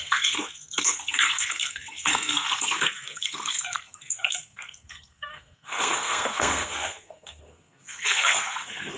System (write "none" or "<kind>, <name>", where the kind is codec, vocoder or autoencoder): codec, SNAC